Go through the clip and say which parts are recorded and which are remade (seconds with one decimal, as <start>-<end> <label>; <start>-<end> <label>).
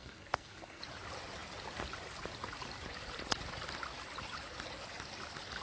0.0-0.8 remade; 0.8-5.6 recorded